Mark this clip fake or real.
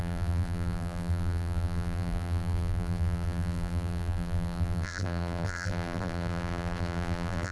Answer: fake